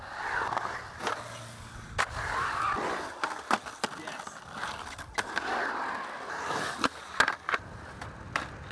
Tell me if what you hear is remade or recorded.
recorded